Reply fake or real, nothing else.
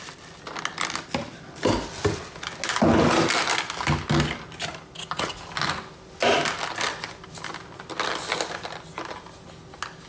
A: real